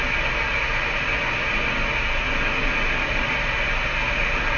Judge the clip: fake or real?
real